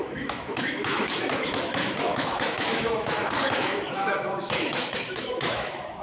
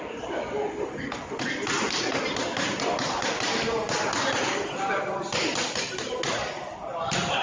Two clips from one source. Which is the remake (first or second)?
first